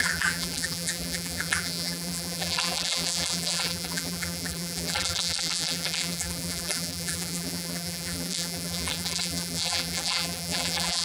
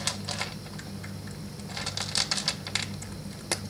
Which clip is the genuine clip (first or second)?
second